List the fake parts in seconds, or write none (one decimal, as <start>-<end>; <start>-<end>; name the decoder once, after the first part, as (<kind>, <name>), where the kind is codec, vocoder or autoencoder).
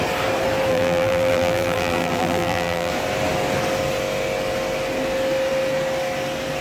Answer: 0.7-2.9 (vocoder, BigVGAN v2)